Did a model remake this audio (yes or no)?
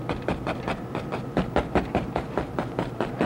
no